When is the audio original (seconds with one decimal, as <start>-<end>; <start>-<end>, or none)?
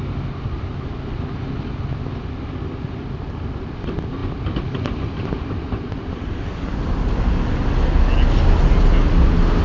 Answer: 0.0-9.6